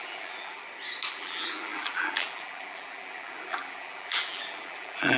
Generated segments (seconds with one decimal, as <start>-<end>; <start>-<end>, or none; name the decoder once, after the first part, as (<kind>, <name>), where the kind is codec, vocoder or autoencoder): 0.0-0.6 (vocoder, BigVGAN v2); 1.1-5.2